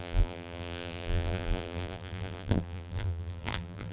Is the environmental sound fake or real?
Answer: fake